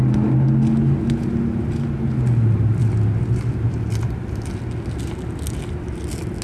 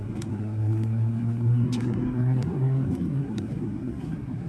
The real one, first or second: first